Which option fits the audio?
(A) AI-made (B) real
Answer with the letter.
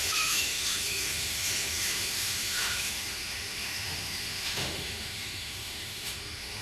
A